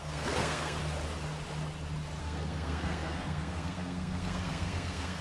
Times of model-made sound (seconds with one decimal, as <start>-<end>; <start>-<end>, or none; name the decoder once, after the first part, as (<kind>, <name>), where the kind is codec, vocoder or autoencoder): 0.0-0.8 (codec, SNAC); 2.2-5.2